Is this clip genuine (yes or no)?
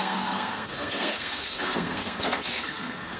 no